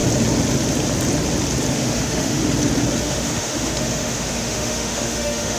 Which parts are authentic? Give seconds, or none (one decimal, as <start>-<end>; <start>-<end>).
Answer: 0.0-1.7; 2.4-3.0